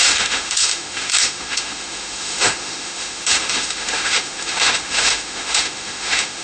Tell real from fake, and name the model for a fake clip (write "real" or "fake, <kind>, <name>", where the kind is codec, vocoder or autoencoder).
fake, autoencoder, DAC-VAE